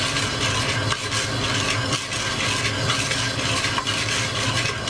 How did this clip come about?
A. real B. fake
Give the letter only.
A